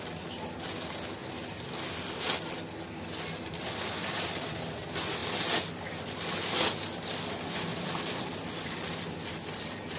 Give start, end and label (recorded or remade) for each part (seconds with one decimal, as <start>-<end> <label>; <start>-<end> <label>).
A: 0.0-10.0 recorded

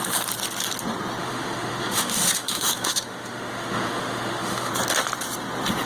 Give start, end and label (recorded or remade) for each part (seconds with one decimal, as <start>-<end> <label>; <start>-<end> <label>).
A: 0.0-1.2 recorded; 1.2-4.7 remade; 4.7-5.9 recorded

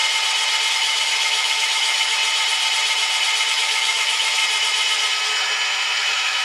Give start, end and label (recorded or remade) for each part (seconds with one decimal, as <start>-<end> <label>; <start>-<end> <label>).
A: 0.0-0.7 recorded; 0.7-2.2 remade; 2.2-3.5 recorded; 3.5-4.4 remade; 4.4-6.0 recorded; 6.0-6.4 remade

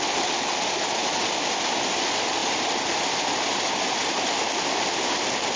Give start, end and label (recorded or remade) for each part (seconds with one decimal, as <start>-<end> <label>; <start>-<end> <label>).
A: 0.0-5.6 recorded

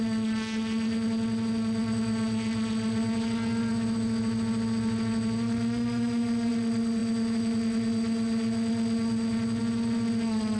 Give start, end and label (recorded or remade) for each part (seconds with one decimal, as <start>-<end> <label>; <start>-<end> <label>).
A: 0.0-10.6 recorded

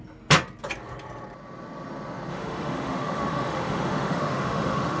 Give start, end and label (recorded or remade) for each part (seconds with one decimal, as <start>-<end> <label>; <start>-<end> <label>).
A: 0.0-2.3 recorded; 2.3-5.0 remade

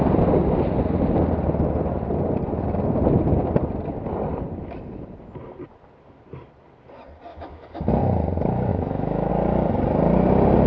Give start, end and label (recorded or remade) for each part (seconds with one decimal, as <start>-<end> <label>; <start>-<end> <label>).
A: 0.0-7.3 recorded; 7.3-7.9 remade; 7.9-8.7 recorded; 8.7-9.3 remade; 9.3-10.7 recorded

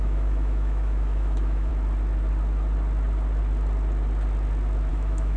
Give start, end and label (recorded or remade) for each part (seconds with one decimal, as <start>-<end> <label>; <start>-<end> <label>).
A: 0.0-1.7 remade; 1.7-4.9 recorded; 4.9-5.4 remade